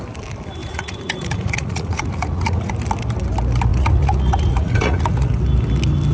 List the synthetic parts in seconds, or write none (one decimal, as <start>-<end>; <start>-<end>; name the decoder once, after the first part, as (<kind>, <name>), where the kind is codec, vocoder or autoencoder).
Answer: 0.6-2.7 (vocoder, Vocos); 3.7-5.4